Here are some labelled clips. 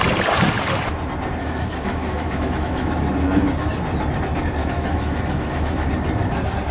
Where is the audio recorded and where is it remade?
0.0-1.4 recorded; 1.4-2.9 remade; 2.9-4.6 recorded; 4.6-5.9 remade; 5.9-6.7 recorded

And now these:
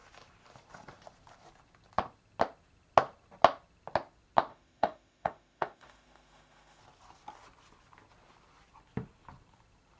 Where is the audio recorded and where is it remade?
0.0-4.5 recorded; 4.5-6.8 remade; 6.8-10.0 recorded